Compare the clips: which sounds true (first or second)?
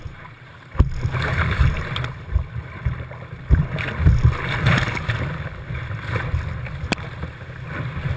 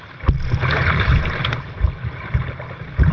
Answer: first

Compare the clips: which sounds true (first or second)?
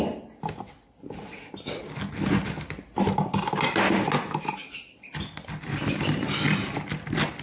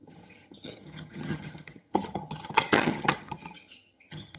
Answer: first